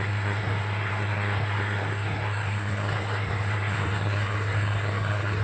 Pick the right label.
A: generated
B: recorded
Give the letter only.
A